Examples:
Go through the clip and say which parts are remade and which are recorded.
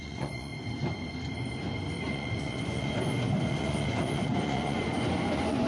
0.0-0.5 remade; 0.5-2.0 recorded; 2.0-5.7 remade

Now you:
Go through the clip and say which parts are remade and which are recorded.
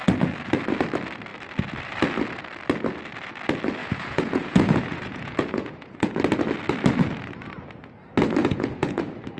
0.0-3.8 recorded; 3.8-6.1 remade; 6.1-8.4 recorded; 8.4-9.0 remade; 9.0-9.4 recorded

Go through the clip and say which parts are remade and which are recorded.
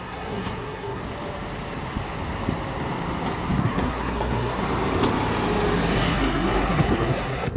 0.0-1.0 remade; 1.0-3.6 recorded; 3.6-4.6 remade; 4.6-6.0 recorded; 6.0-7.6 remade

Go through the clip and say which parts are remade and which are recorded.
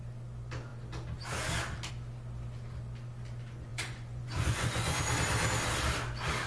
0.0-3.7 recorded; 3.7-5.0 remade; 5.0-6.5 recorded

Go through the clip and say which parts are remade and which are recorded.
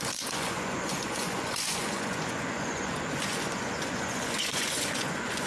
0.0-5.5 remade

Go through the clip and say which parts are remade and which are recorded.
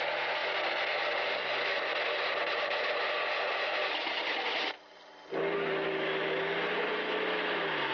0.0-7.9 recorded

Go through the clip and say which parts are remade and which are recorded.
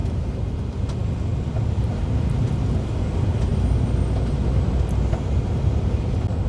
0.0-6.5 recorded